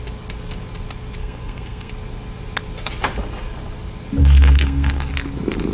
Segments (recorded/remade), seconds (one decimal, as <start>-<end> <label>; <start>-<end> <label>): 0.0-1.2 recorded; 1.2-1.9 remade; 1.9-4.2 recorded; 4.2-5.1 remade; 5.1-5.7 recorded